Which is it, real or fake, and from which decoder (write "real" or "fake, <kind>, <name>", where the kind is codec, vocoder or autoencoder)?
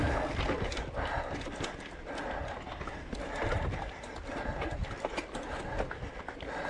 real